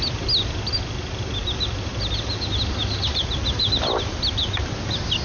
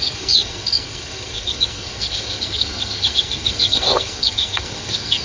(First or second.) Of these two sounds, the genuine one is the first